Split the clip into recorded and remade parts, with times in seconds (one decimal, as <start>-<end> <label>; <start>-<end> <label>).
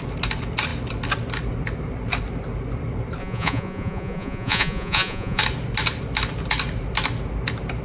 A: 0.0-3.2 recorded; 3.2-5.4 remade; 5.4-7.8 recorded